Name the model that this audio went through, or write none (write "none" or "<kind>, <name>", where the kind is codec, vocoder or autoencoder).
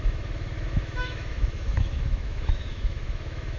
autoencoder, DAC-VAE